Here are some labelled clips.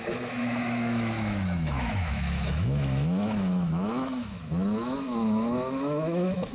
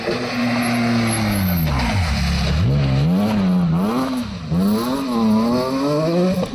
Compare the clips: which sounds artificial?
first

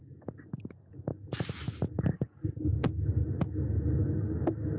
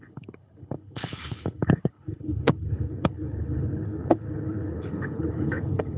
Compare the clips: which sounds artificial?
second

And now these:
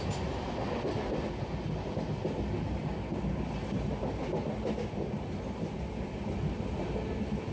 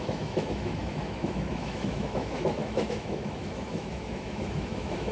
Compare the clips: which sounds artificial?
second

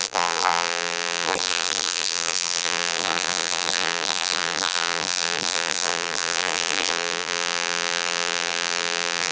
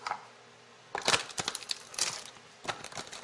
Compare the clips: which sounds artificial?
first